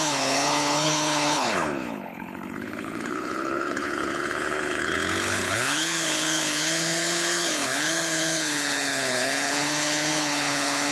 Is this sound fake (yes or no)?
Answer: yes